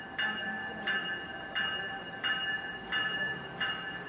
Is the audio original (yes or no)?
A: yes